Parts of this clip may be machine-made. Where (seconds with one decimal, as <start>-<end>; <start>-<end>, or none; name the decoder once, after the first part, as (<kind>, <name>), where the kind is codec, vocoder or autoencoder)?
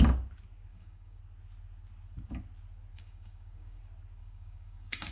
0.7-1.2 (codec, DAC); 2.9-3.8; 4.2-5.1